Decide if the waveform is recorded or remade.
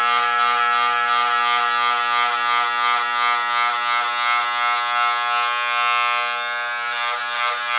recorded